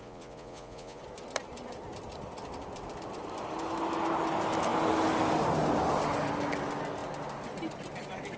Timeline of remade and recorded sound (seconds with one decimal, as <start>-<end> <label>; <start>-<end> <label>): 0.0-1.0 remade; 1.0-8.4 recorded